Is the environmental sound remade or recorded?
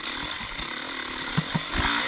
recorded